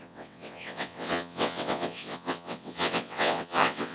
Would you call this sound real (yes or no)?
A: no